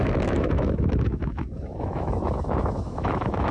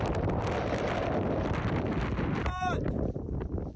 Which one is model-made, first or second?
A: first